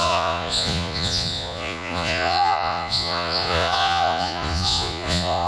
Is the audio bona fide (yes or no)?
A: no